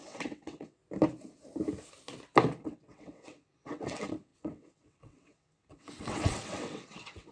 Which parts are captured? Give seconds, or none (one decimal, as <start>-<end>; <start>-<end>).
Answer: 0.8-2.6